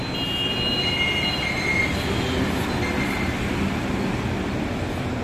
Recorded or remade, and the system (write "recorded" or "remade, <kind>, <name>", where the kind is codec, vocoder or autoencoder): recorded